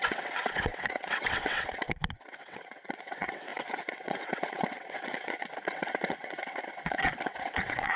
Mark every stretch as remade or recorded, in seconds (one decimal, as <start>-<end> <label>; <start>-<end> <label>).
0.0-8.0 remade